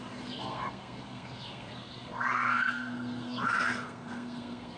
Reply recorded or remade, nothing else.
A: remade